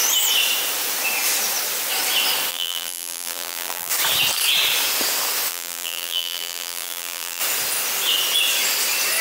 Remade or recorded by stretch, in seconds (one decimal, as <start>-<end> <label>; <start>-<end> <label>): 0.0-2.5 recorded; 2.5-3.9 remade; 3.9-5.5 recorded; 5.5-7.4 remade; 7.4-9.2 recorded